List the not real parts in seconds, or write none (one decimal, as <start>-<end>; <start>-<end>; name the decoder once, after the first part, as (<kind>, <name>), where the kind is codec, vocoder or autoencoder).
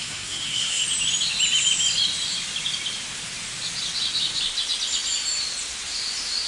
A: 0.0-0.8 (codec, SNAC)